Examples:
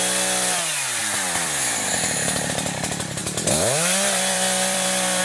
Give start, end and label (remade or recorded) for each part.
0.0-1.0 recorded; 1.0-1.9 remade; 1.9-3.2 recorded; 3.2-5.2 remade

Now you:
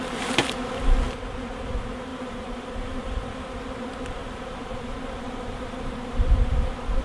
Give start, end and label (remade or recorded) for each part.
0.0-2.1 recorded; 2.1-2.6 remade; 2.6-4.2 recorded; 4.2-7.0 remade

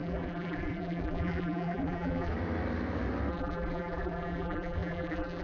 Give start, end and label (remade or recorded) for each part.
0.0-2.3 remade; 2.3-3.3 recorded; 3.3-5.4 remade

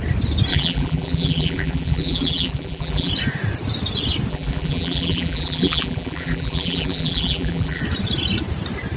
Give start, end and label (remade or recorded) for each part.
0.0-0.5 recorded; 0.5-3.1 remade; 3.1-4.3 recorded; 4.3-7.8 remade; 7.8-9.0 recorded

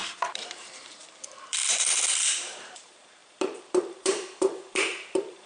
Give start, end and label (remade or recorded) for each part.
0.0-5.5 remade

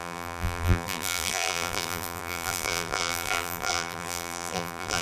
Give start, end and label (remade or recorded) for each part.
0.0-5.0 remade